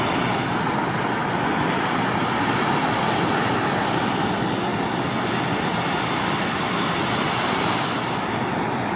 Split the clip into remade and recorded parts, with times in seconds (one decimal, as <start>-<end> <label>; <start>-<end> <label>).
0.0-1.2 recorded; 1.2-2.5 remade; 2.5-9.0 recorded